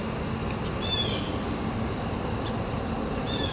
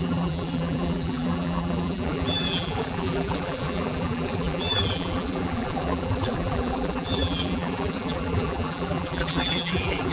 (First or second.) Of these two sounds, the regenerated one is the second